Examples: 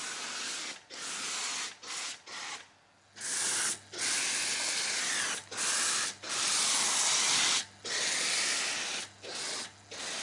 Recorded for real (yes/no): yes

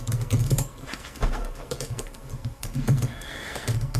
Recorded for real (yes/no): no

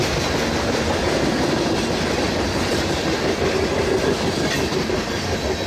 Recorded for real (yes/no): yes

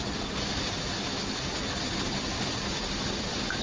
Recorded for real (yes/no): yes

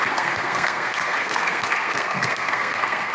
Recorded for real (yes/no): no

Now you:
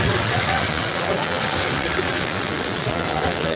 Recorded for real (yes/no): no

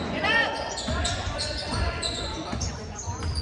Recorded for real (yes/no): no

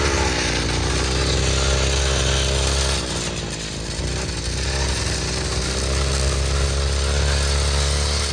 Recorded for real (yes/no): yes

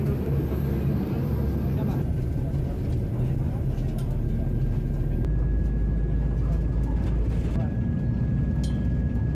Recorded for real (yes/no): yes